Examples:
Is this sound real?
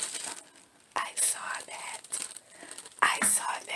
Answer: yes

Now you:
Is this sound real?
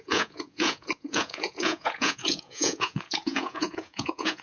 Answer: no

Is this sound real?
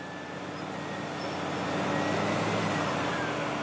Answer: yes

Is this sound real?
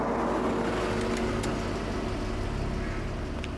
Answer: yes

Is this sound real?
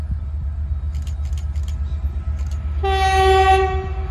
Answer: yes